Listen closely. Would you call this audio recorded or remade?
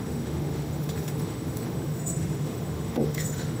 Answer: remade